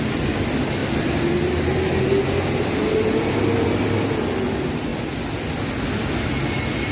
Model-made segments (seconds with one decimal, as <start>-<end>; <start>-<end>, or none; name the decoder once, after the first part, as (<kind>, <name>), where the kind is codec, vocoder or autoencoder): none